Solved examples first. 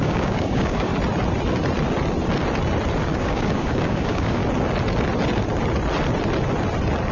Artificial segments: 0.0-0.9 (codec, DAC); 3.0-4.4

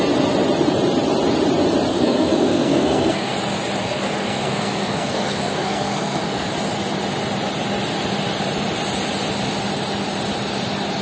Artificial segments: 1.9-3.3 (codec, SNAC); 3.8-6.5